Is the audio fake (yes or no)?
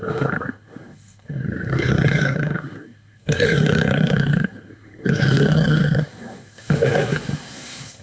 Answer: yes